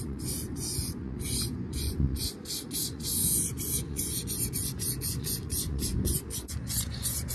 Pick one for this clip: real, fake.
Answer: fake